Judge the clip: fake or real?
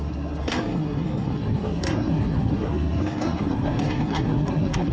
fake